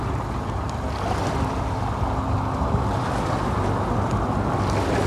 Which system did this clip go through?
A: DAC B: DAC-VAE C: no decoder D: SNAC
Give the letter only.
C